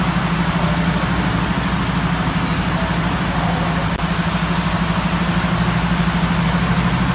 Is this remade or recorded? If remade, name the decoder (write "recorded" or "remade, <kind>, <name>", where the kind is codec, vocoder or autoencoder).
recorded